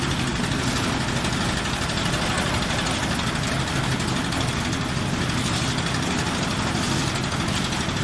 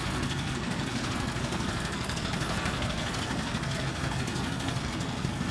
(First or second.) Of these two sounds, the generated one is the second